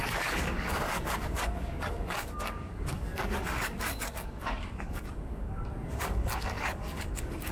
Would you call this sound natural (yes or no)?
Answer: no